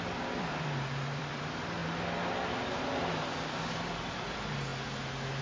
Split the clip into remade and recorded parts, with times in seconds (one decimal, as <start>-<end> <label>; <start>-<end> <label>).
0.0-1.8 remade; 1.8-2.8 recorded; 2.8-4.7 remade; 4.7-5.4 recorded